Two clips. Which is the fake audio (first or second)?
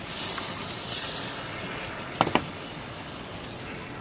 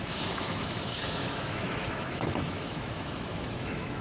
second